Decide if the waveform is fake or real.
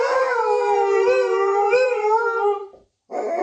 fake